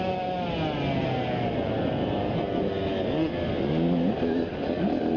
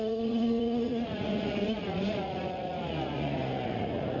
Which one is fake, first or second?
second